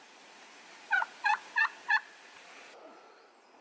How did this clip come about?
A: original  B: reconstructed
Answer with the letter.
B